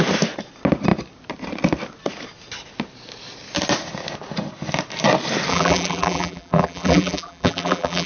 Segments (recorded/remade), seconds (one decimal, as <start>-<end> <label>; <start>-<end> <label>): 0.0-5.5 recorded; 5.5-8.1 remade